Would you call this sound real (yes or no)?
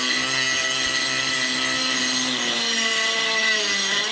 yes